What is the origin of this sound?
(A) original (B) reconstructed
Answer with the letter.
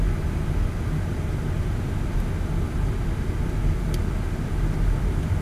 A